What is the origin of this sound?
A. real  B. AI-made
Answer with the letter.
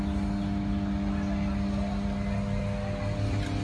A